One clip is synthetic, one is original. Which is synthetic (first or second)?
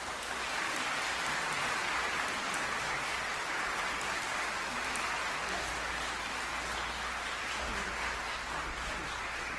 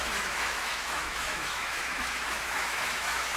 second